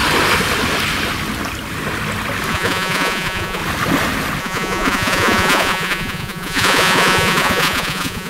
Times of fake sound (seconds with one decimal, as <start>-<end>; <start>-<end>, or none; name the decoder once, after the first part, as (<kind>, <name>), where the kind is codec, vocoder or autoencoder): 2.5-3.6 (vocoder, Vocos); 4.4-8.3